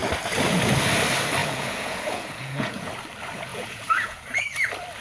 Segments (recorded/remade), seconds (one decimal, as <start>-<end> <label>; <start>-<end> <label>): 0.0-1.4 recorded; 1.4-2.9 remade; 2.9-3.5 recorded; 3.5-4.4 remade; 4.4-5.0 recorded